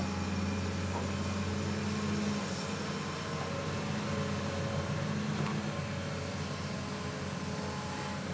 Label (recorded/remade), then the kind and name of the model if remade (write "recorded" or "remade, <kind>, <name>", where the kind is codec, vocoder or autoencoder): recorded